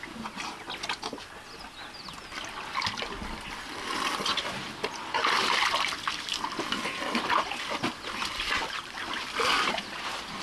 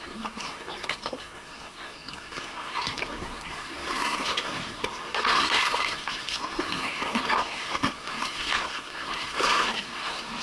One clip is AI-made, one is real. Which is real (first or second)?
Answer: first